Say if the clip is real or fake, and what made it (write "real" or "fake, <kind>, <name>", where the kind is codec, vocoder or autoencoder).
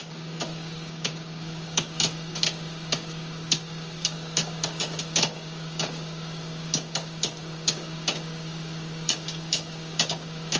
fake, codec, DAC